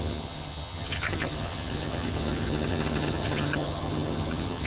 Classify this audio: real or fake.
fake